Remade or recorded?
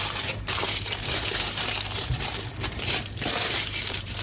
remade